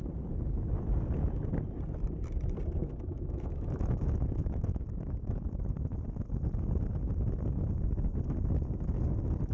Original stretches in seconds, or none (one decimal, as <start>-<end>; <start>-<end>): 0.0-2.8; 5.6-9.5